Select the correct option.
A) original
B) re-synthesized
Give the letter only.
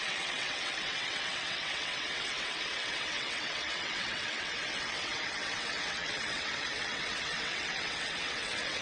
B